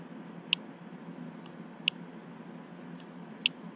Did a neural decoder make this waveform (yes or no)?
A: no